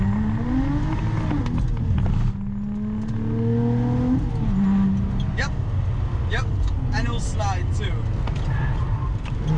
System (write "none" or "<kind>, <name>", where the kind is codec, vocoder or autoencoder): none